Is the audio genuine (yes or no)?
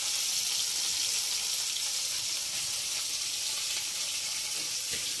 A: yes